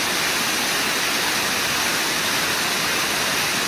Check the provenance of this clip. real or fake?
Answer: real